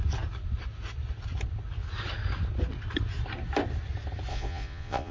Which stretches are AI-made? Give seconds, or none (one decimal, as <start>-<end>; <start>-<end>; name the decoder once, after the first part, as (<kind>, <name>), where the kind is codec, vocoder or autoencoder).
4.3-5.1 (vocoder, Vocos)